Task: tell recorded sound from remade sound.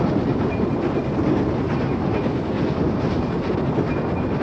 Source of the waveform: recorded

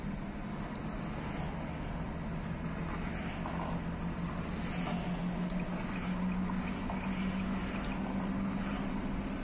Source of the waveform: recorded